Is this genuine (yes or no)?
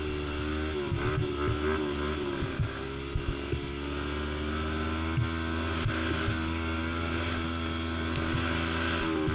yes